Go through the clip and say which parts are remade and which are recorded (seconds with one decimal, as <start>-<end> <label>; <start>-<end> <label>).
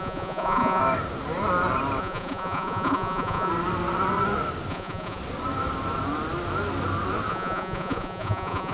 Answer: 0.0-0.8 remade; 0.8-2.0 recorded; 2.0-3.5 remade; 3.5-4.7 recorded; 4.7-5.2 remade; 5.2-7.3 recorded; 7.3-8.7 remade